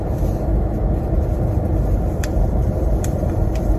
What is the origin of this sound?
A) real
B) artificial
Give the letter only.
B